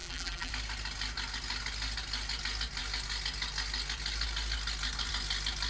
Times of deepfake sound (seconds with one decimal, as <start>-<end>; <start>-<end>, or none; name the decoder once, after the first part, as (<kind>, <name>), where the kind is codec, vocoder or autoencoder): 0.0-0.5 (vocoder, BigVGAN v2)